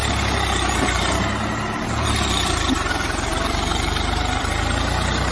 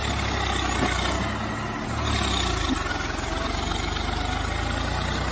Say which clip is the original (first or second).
second